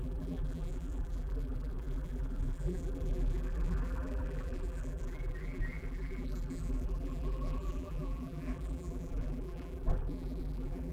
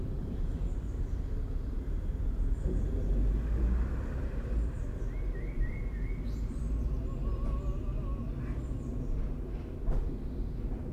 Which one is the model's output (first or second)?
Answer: first